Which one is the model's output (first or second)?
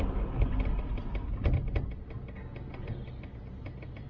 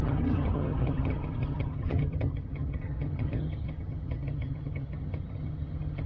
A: second